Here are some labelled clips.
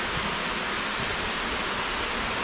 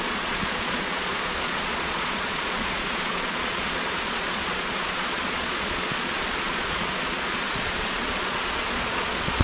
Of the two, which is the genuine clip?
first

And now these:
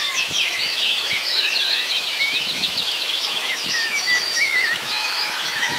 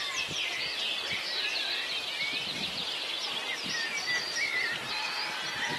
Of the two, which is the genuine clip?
second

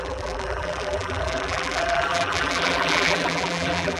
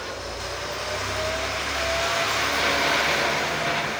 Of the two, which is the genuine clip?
second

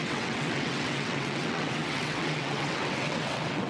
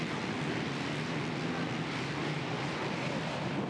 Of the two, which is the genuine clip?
second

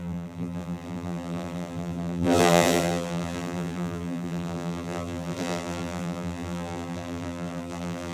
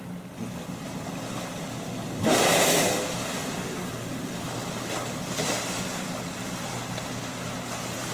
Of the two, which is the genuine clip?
second